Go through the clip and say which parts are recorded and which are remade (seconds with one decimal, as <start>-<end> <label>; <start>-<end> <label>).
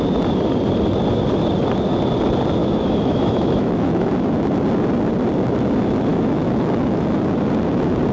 0.0-2.6 recorded; 2.6-4.1 remade; 4.1-6.1 recorded; 6.1-7.2 remade; 7.2-8.1 recorded